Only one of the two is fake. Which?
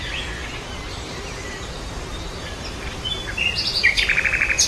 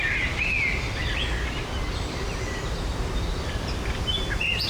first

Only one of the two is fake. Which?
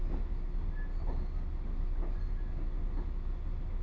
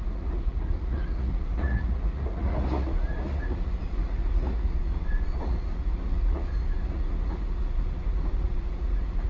second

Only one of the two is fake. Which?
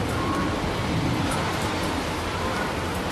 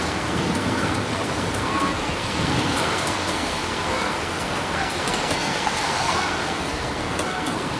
second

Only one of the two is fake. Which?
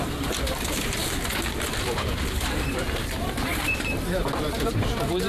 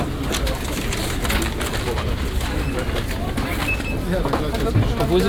first